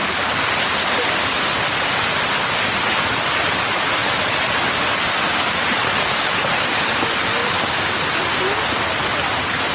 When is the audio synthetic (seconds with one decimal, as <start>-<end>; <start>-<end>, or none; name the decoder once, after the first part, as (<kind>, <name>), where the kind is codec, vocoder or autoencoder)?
none